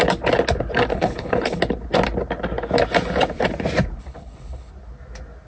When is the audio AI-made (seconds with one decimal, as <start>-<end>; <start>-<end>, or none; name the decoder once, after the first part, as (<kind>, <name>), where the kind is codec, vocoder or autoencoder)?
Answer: 0.9-1.6 (codec, HILCodec); 4.0-4.7